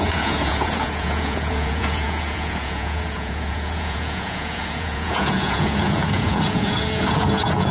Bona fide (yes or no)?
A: no